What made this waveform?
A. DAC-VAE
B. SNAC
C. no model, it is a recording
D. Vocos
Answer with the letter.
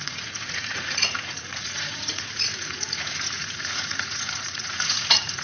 D